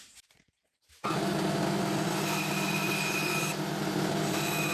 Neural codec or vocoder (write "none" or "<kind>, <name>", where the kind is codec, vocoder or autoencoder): none